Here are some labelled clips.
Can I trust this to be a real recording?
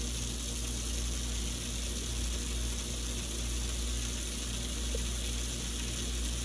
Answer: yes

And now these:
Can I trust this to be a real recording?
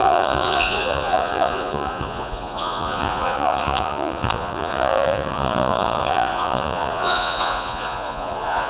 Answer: no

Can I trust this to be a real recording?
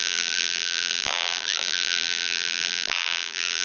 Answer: no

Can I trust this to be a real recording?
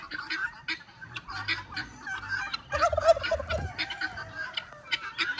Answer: yes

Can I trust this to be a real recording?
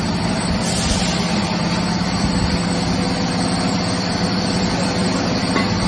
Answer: yes